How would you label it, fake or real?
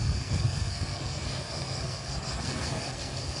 fake